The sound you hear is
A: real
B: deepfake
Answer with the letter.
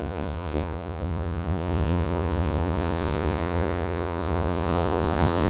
B